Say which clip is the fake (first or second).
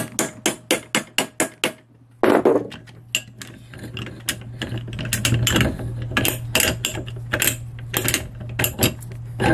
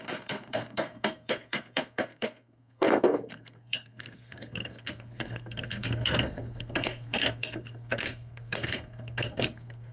second